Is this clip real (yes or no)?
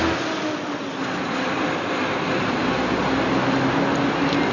yes